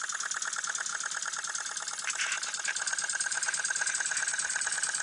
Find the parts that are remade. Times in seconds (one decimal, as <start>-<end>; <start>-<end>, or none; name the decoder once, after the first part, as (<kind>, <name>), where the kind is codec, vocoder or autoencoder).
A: none